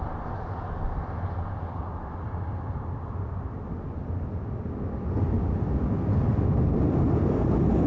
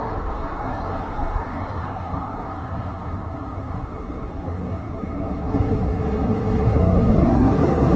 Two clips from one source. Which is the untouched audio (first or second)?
first